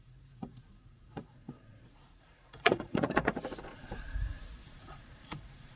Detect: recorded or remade remade